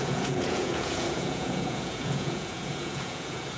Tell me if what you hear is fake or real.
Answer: fake